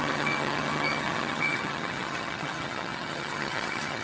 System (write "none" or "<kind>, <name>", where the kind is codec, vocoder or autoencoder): vocoder, HiFi-GAN